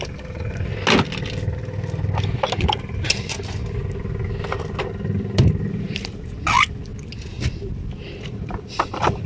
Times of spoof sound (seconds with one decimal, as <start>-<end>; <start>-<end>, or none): 0.0-0.7; 5.7-6.9; 8.2-9.3